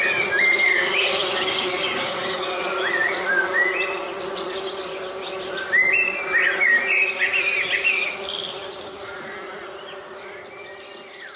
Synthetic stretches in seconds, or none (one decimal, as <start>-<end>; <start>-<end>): 0.7-2.6